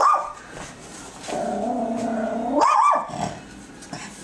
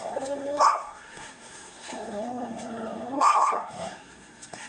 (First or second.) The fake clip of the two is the second